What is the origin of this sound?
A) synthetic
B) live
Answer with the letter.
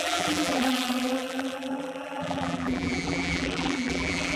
A